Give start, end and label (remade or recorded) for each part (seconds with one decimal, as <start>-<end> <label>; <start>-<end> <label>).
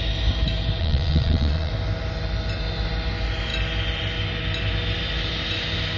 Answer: 0.0-0.8 recorded; 0.8-1.7 remade; 1.7-6.0 recorded